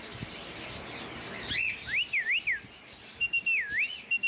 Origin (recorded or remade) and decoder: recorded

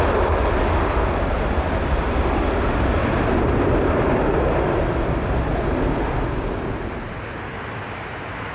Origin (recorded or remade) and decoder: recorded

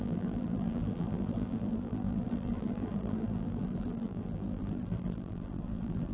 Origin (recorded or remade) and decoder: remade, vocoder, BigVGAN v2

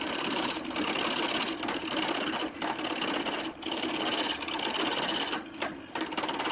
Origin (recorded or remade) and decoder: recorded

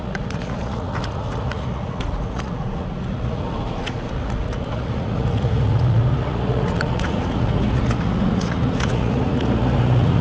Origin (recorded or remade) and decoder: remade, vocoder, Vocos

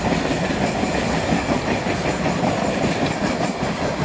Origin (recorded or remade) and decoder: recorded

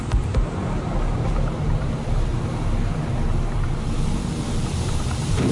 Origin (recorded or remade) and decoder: remade, vocoder, BigVGAN v2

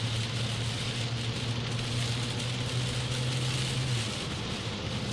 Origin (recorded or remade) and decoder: recorded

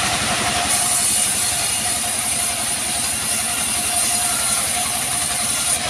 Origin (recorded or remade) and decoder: remade, vocoder, BigVGAN v2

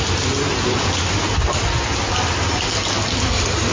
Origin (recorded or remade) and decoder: recorded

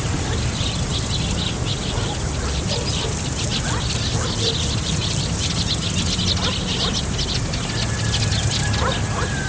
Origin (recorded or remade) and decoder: recorded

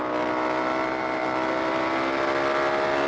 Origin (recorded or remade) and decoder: recorded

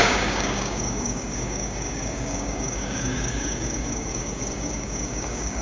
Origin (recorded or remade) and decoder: remade, codec, DAC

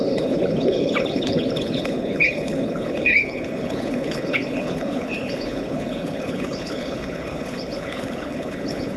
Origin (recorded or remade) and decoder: remade, codec, HILCodec